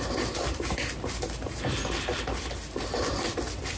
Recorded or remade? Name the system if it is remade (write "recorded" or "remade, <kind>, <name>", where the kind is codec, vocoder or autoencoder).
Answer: recorded